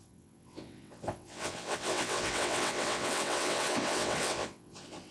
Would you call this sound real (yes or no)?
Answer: no